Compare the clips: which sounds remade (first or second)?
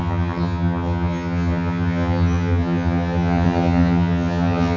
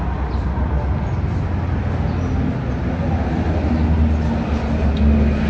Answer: first